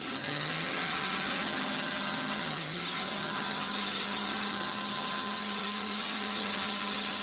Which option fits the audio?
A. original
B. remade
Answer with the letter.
B